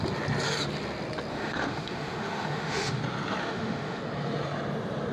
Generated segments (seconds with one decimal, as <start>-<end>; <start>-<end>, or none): 1.3-3.0; 3.4-4.0